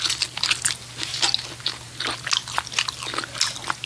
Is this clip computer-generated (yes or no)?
no